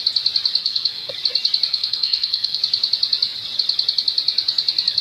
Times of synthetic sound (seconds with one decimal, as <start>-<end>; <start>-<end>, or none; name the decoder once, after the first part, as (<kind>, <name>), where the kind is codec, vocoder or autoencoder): 0.6-1.1 (codec, SNAC); 1.7-2.6